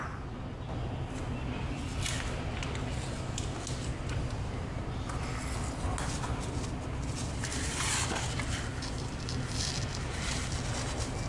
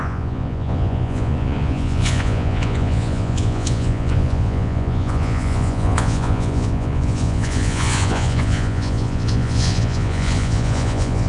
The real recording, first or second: first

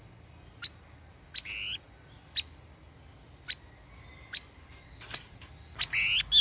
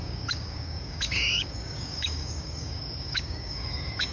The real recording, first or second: first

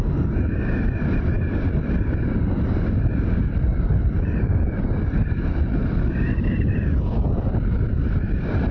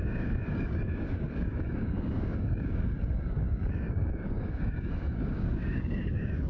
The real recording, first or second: first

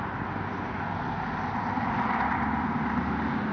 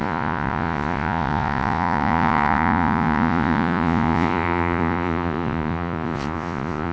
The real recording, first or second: first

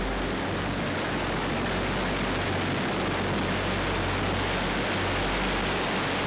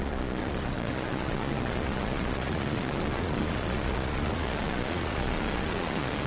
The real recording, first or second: first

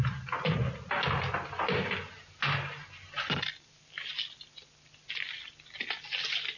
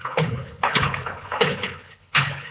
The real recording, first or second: first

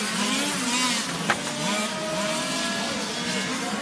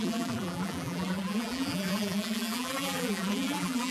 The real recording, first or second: first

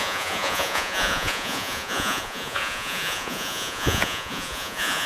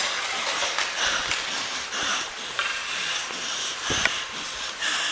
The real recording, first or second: second